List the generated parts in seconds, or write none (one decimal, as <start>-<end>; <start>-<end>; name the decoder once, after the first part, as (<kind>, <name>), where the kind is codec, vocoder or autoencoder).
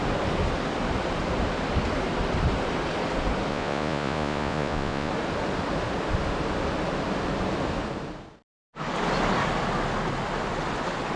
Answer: 3.5-5.1 (vocoder, Vocos)